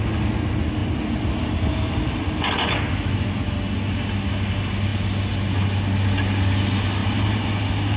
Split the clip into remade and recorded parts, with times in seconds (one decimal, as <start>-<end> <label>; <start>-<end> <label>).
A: 0.0-8.0 recorded